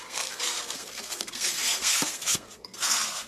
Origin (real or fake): fake